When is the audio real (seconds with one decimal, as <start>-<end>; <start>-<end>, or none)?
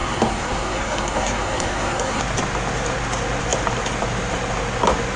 2.2-5.2